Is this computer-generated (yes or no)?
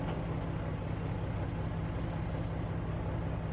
no